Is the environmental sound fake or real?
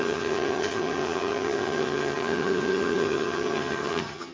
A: fake